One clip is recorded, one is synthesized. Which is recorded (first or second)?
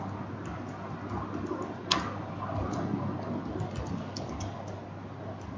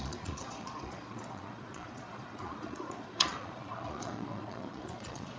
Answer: first